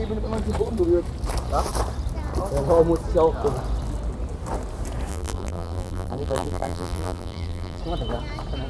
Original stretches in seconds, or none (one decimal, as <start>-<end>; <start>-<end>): 0.0-5.1; 7.8-8.7